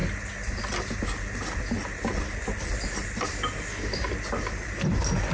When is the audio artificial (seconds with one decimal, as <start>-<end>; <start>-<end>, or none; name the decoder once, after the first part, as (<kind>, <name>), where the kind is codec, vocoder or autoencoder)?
none

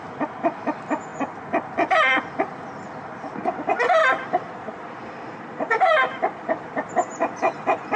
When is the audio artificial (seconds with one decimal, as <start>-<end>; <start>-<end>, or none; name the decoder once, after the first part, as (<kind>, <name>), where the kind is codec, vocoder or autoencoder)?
4.0-6.9 (vocoder, BigVGAN v2)

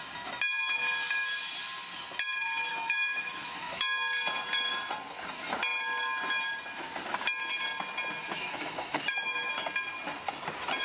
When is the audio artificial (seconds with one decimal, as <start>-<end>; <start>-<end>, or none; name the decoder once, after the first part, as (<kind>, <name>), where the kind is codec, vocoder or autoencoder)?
2.7-3.8 (autoencoder, DAC-VAE); 8.2-9.5